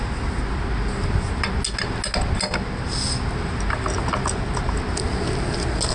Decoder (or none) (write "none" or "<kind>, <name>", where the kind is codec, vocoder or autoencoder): none